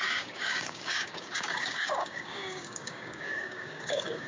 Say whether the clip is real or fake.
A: fake